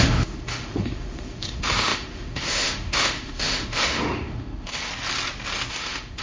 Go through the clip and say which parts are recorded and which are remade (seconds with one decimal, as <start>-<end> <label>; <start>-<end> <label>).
0.0-4.9 remade; 4.9-5.7 recorded; 5.7-6.2 remade